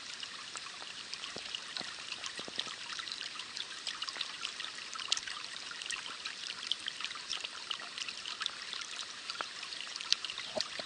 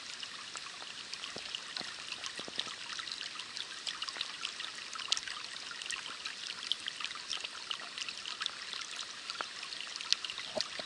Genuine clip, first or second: second